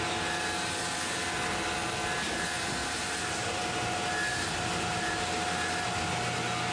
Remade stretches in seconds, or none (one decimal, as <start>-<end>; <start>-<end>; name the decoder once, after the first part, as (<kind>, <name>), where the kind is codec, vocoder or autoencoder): 2.8-3.6 (vocoder, BigVGAN v2); 4.3-5.1

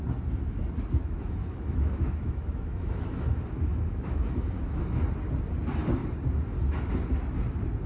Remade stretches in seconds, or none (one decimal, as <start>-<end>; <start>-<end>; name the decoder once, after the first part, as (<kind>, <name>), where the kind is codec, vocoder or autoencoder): 1.4-4.8 (autoencoder, DAC-VAE)

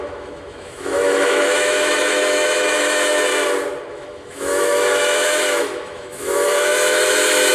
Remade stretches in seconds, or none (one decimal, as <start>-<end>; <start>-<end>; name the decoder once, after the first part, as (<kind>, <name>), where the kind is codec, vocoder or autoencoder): 0.0-3.3 (autoencoder, DAC-VAE); 3.9-7.5

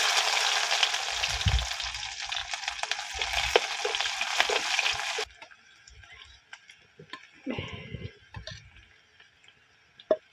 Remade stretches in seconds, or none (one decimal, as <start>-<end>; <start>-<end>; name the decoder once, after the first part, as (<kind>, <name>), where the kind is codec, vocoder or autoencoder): none

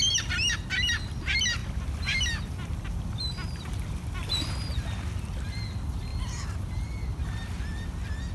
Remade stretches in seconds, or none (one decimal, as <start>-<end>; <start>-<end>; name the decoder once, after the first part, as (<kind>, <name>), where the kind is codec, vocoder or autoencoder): 1.6-4.3 (vocoder, BigVGAN v2)

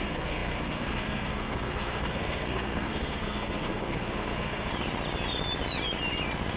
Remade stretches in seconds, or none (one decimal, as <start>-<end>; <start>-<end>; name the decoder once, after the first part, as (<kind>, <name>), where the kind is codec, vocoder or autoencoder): 0.0-4.7 (codec, SNAC)

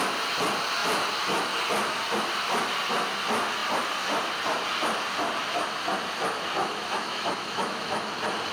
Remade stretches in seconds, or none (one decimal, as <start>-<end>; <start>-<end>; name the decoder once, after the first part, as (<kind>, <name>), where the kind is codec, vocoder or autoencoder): 6.6-8.1 (autoencoder, DAC-VAE)

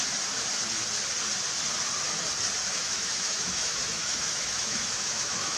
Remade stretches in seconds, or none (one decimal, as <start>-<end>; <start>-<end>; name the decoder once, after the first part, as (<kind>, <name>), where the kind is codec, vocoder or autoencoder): 2.6-5.6 (autoencoder, DAC-VAE)